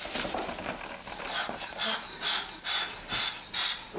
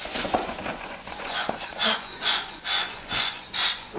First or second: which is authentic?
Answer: first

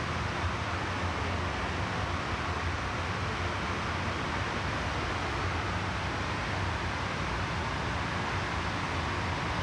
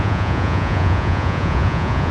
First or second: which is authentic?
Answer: first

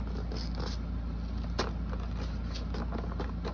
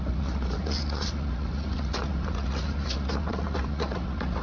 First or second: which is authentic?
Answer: first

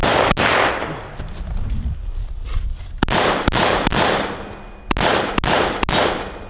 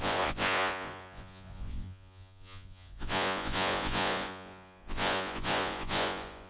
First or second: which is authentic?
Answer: first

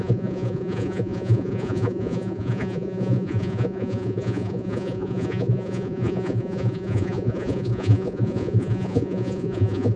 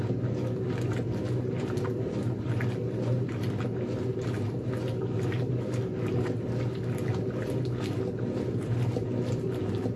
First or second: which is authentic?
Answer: second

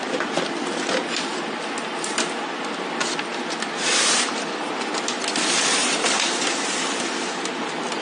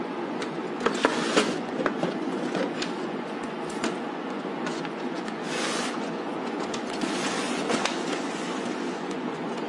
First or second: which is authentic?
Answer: first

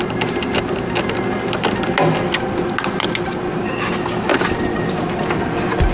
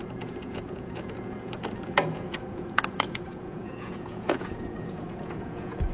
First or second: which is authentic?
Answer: first